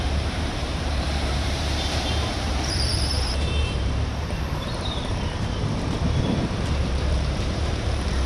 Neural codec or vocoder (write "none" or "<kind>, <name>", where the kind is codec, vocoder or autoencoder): vocoder, BigVGAN v2